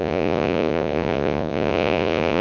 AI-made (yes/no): yes